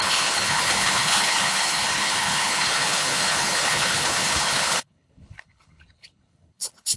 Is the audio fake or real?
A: fake